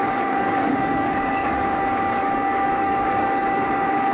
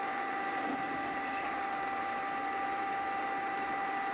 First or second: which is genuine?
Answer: second